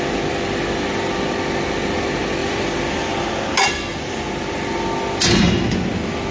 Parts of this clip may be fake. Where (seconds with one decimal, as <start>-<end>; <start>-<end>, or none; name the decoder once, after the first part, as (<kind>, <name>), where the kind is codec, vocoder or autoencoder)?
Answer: 2.4-3.3 (vocoder, BigVGAN v2)